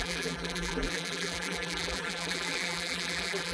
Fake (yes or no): yes